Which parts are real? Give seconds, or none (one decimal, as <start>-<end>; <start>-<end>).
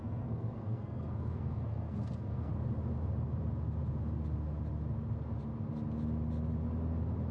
2.5-7.3